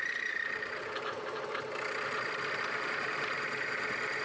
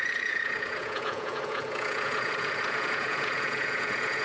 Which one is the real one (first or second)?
first